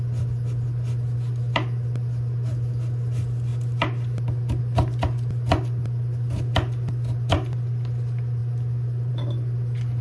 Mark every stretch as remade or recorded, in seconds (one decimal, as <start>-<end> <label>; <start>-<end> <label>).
0.0-10.0 recorded